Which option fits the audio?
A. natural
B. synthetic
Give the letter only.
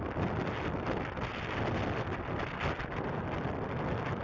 A